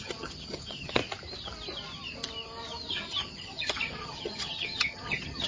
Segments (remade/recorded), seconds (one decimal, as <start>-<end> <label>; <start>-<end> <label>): 0.0-1.0 remade; 1.0-2.9 recorded; 2.9-5.5 remade